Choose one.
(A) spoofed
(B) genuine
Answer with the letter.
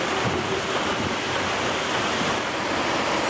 B